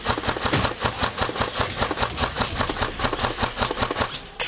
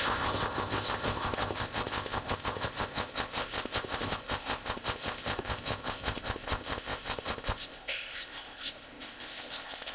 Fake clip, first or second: second